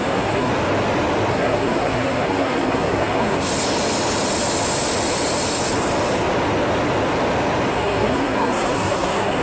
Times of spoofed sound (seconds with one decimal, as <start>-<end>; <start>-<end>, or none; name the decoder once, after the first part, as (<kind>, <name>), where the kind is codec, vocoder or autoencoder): 0.0-0.5 (codec, SNAC); 1.3-3.5; 7.7-9.4